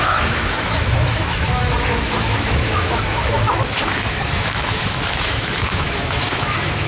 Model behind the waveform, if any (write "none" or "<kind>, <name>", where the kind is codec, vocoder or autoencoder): autoencoder, DAC-VAE